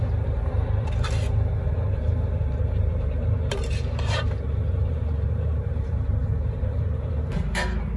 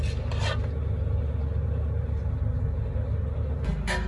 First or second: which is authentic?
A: second